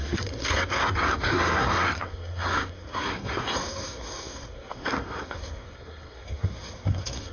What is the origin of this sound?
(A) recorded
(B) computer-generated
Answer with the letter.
B